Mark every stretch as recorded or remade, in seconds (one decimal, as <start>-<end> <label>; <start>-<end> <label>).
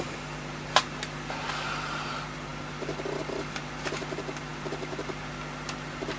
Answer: 0.0-6.2 recorded